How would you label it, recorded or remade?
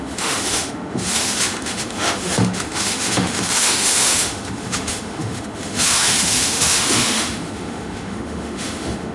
remade